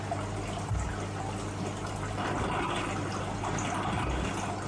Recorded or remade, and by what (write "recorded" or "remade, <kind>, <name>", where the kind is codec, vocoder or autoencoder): recorded